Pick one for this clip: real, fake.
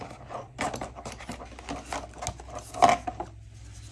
real